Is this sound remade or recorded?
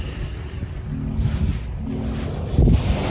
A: recorded